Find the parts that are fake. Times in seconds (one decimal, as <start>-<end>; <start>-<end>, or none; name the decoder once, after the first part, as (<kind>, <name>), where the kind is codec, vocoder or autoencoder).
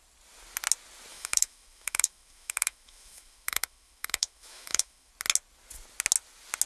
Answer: 1.1-5.1 (autoencoder, DAC-VAE)